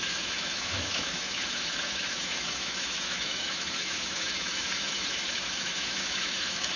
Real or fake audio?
fake